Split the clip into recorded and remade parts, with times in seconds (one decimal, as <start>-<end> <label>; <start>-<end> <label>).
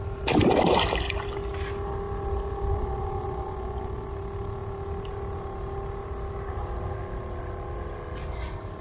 0.0-2.7 recorded; 2.7-4.1 remade; 4.1-8.8 recorded